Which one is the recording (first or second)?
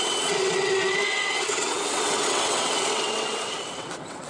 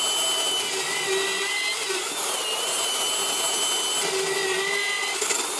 second